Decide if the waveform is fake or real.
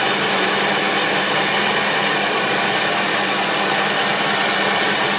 real